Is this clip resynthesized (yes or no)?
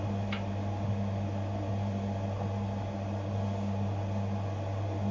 no